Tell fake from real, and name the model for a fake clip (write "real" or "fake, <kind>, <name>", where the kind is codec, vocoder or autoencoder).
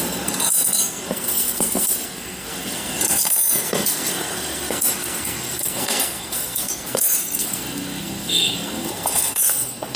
fake, codec, SNAC